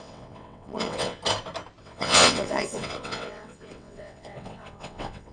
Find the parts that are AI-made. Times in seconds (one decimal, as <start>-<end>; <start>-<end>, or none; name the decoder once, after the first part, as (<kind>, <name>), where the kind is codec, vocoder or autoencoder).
0.0-1.2 (vocoder, WaveNeXt); 1.8-5.3

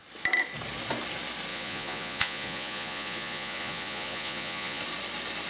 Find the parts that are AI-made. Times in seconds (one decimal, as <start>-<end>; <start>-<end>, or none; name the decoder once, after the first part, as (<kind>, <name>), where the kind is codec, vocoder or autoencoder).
1.5-4.8 (vocoder, Vocos)